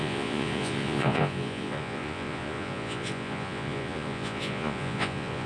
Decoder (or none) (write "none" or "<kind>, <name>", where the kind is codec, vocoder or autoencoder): vocoder, Vocos